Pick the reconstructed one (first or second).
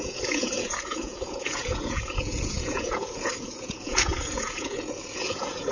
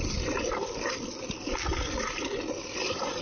first